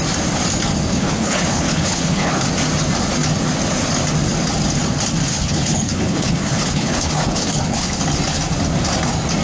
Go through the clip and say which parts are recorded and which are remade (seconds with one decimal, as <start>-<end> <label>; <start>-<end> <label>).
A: 0.0-0.9 recorded; 0.9-2.5 remade; 2.5-5.3 recorded; 5.3-8.0 remade; 8.0-9.4 recorded